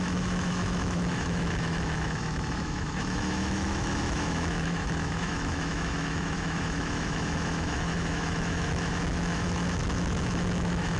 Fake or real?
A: fake